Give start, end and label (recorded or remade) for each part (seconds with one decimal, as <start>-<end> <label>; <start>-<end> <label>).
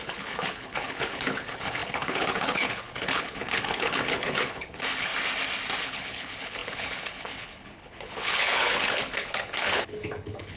0.0-5.1 remade; 5.1-5.8 recorded; 5.8-10.6 remade